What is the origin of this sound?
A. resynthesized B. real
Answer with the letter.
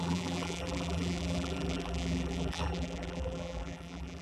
A